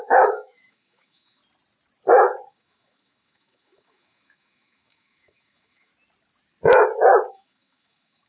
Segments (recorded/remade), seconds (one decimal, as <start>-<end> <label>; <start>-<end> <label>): 0.0-1.4 remade; 1.4-2.5 recorded; 2.5-5.9 remade; 5.9-7.3 recorded; 7.3-8.3 remade